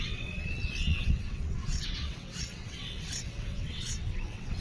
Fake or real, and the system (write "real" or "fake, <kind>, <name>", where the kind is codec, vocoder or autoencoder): fake, vocoder, WaveNeXt